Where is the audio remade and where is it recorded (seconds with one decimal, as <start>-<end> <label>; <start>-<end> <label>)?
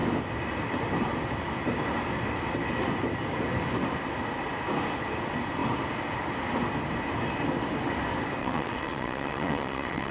0.0-8.4 recorded; 8.4-10.1 remade